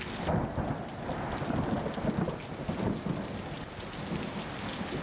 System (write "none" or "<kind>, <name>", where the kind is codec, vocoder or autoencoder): none